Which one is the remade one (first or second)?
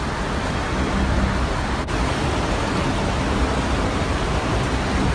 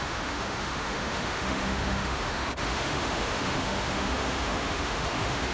second